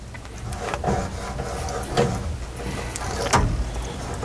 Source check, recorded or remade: recorded